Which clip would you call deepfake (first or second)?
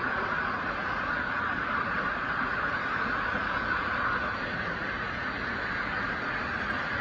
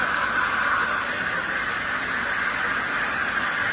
first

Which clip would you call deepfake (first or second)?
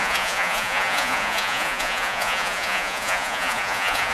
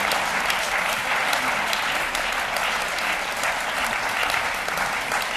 first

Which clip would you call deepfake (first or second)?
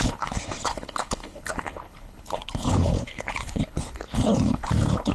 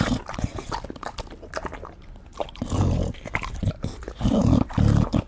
first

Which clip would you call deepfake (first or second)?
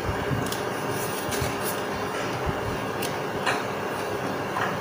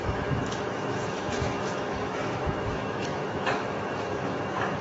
second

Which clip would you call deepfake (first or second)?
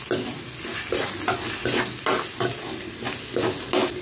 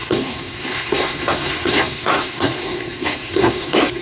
second